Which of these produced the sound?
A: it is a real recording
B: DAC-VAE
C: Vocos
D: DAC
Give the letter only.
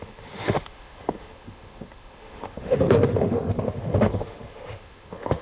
B